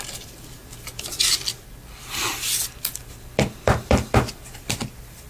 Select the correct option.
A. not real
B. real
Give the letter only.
A